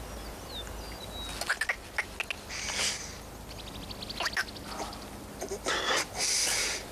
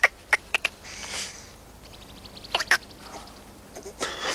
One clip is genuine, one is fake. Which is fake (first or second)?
second